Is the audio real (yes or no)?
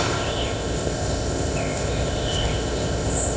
no